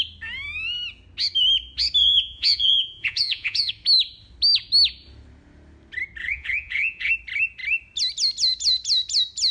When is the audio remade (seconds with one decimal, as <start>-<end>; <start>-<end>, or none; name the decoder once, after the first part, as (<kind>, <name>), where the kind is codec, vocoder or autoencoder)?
2.0-3.7 (vocoder, Vocos); 6.2-7.1